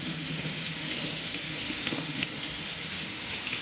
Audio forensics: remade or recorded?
remade